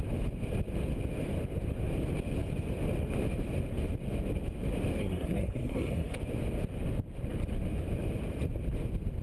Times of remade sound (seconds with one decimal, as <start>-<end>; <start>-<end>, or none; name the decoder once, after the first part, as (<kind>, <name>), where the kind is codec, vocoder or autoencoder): 5.0-6.2 (codec, SNAC)